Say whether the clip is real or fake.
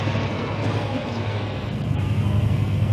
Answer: fake